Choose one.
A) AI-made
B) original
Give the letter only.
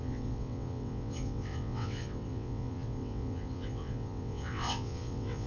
A